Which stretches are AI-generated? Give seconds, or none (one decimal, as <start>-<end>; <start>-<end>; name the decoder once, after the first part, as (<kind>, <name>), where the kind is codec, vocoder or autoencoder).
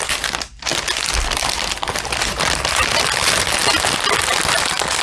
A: none